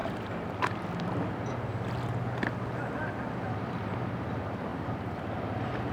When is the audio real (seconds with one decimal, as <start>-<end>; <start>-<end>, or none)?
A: 0.0-4.7; 5.4-5.9